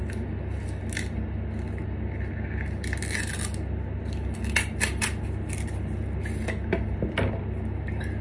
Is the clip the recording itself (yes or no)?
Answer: yes